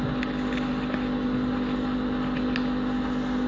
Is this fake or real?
real